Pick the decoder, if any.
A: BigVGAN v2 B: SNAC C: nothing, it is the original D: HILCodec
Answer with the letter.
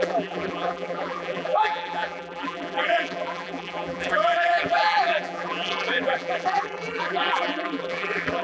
A